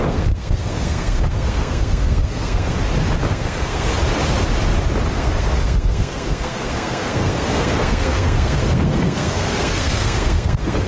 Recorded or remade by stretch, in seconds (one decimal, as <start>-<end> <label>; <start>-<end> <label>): 0.0-2.7 remade; 2.7-3.3 recorded; 3.3-3.9 remade; 3.9-5.1 recorded; 5.1-10.9 remade